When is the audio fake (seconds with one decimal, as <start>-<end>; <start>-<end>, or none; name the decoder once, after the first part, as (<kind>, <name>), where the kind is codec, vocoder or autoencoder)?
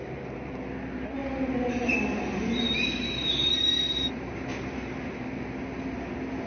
none